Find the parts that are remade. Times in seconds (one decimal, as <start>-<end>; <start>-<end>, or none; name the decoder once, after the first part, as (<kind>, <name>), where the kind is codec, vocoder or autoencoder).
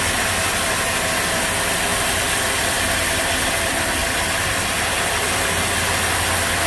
none